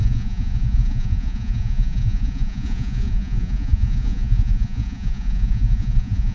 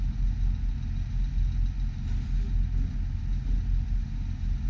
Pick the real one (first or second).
second